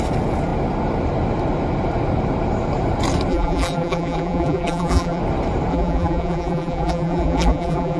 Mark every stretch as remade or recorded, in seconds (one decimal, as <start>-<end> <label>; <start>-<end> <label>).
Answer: 0.0-3.3 recorded; 3.3-5.2 remade; 5.2-5.7 recorded; 5.7-8.0 remade